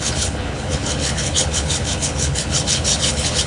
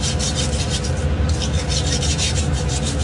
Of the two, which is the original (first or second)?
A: second